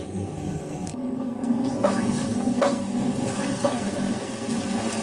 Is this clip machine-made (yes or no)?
yes